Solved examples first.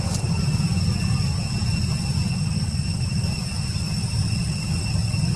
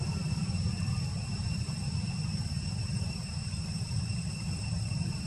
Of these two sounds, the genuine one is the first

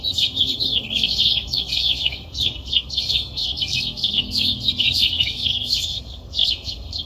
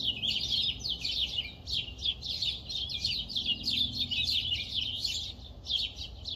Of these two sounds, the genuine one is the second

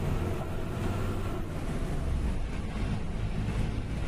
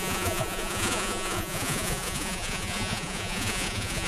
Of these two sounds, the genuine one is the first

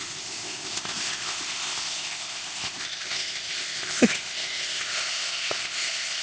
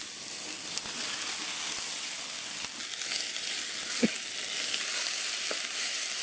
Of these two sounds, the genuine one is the second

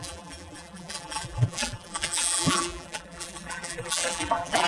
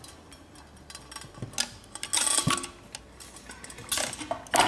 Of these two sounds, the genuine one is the second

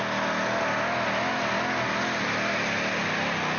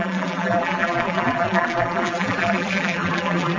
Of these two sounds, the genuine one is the first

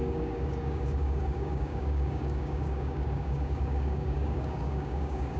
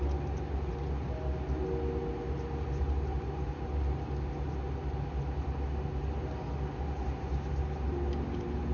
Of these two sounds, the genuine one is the second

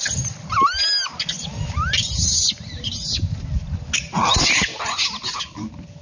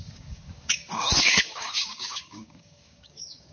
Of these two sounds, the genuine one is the first